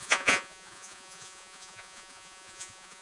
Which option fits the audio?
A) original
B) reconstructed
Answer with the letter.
B